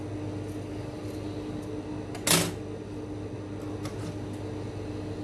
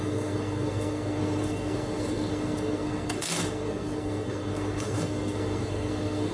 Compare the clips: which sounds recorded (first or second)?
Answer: first